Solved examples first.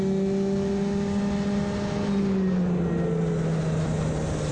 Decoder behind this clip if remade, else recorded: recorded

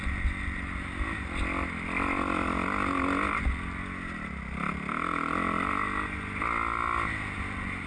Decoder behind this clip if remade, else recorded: recorded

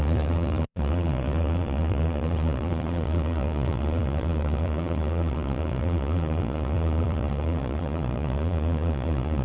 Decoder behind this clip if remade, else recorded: remade, vocoder, Vocos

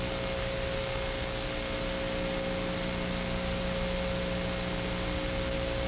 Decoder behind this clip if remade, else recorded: recorded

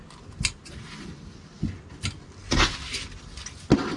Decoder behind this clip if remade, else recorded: recorded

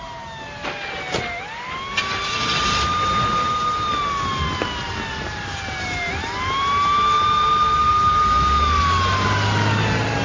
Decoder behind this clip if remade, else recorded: recorded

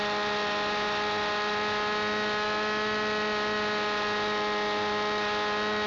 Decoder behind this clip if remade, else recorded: recorded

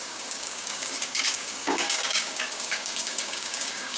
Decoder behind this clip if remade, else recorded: remade, codec, DAC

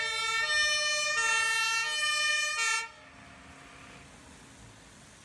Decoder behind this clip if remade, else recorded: recorded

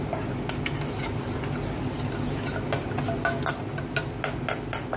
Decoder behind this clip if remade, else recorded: recorded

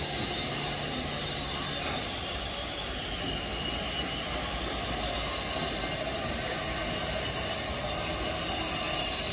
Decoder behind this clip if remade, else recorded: recorded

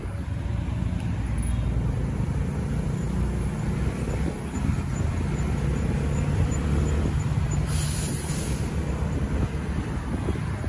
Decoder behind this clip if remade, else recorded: recorded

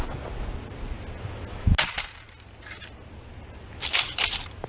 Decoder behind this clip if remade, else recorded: recorded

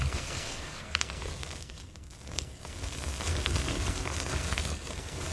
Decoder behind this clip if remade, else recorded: remade, codec, SNAC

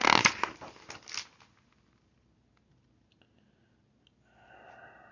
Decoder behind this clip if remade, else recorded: recorded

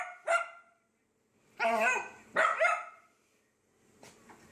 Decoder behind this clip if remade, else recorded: recorded